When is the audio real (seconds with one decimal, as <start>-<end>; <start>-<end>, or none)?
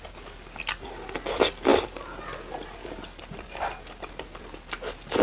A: 0.0-1.7; 3.5-5.2